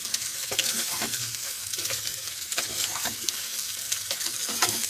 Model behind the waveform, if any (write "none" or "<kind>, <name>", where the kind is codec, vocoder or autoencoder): codec, SNAC